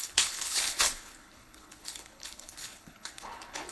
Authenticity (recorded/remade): remade